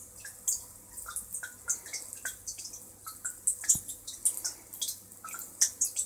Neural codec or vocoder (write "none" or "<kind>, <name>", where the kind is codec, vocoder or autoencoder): none